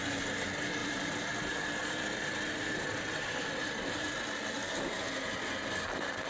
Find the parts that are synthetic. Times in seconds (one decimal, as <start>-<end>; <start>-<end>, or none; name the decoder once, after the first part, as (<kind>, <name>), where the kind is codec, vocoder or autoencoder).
0.8-4.1 (vocoder, BigVGAN v2)